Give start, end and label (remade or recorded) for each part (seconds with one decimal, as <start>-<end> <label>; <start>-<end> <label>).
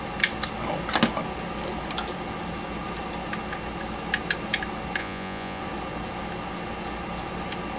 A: 0.0-5.0 recorded; 5.0-5.6 remade; 5.6-7.8 recorded